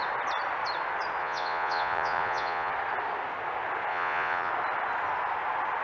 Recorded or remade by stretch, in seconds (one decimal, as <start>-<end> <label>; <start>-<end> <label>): 0.0-1.2 recorded; 1.2-2.7 remade; 2.7-3.9 recorded; 3.9-4.5 remade; 4.5-5.8 recorded